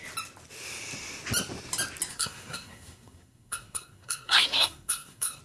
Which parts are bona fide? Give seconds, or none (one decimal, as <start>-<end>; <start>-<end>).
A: 0.0-2.1